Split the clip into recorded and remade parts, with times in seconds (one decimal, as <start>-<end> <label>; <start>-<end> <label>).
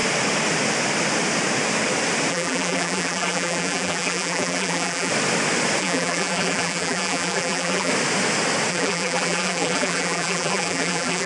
0.0-2.3 recorded; 2.3-5.1 remade; 5.1-5.8 recorded; 5.8-7.9 remade; 7.9-8.7 recorded; 8.7-11.3 remade